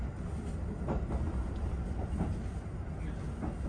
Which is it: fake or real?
real